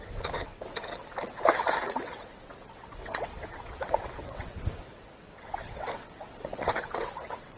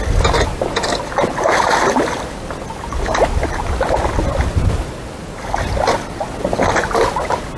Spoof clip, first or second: first